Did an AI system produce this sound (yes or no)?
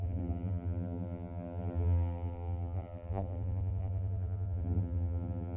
yes